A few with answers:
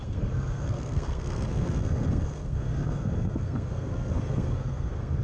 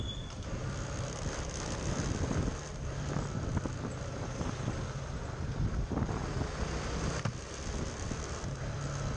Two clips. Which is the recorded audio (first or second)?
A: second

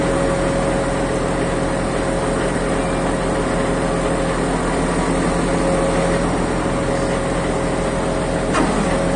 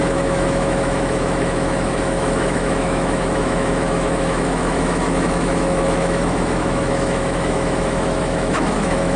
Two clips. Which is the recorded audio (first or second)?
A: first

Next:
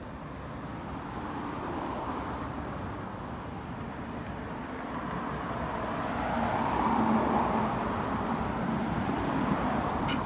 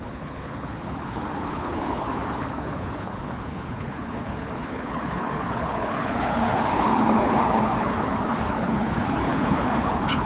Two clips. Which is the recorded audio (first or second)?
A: first